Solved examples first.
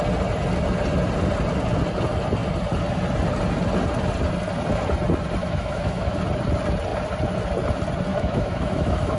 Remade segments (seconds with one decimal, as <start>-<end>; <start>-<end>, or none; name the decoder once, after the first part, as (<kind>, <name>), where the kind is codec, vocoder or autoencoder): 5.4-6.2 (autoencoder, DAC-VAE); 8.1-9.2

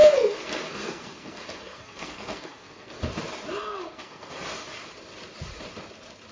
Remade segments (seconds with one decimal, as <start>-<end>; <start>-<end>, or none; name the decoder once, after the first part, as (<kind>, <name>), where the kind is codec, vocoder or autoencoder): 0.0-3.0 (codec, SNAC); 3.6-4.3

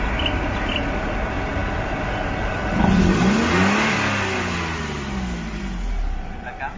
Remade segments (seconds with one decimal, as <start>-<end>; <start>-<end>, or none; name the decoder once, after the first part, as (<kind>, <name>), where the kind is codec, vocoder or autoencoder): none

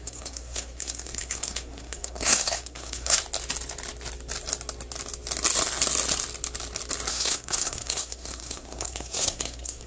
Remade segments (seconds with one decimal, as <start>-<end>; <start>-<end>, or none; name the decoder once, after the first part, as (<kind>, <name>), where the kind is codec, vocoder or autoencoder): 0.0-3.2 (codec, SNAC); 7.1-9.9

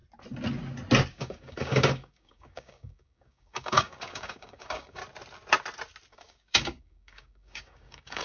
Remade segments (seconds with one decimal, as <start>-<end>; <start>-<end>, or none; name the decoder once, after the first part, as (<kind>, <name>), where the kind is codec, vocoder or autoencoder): 1.1-5.0 (codec, DAC); 6.1-8.2

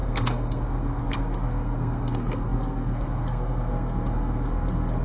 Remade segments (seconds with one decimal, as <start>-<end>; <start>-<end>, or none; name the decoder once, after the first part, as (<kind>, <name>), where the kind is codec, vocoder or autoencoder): 0.0-5.0 (codec, SNAC)